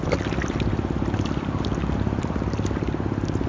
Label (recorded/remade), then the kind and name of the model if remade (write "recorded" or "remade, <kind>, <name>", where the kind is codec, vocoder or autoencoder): recorded